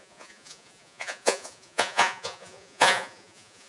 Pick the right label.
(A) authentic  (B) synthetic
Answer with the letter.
B